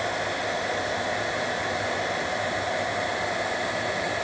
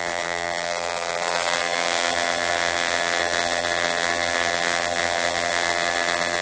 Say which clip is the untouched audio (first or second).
first